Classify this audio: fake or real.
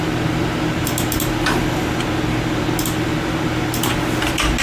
real